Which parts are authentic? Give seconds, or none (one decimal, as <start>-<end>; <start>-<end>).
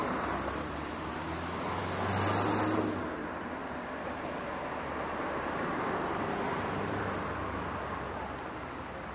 1.2-3.6; 7.0-9.1